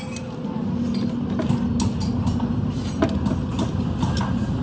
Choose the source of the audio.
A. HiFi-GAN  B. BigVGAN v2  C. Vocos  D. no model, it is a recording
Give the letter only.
D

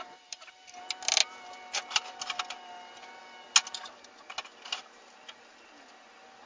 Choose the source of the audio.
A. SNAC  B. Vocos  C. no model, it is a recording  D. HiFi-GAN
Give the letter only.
C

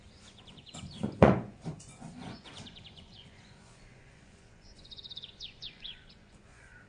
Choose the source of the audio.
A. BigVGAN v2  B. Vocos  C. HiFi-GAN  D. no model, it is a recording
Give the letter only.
B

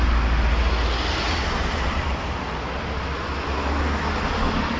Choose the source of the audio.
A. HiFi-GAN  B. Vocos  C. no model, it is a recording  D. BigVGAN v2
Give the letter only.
C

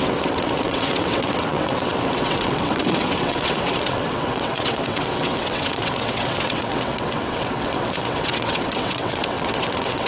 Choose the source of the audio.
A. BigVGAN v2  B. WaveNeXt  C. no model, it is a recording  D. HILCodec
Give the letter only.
B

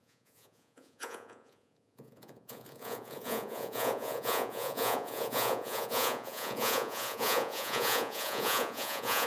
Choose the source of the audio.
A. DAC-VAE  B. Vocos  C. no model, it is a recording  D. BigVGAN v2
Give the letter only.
B